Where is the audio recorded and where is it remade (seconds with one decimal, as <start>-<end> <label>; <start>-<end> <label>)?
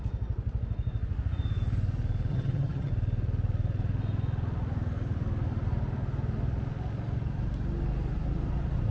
0.0-2.3 recorded; 2.3-2.9 remade; 2.9-8.9 recorded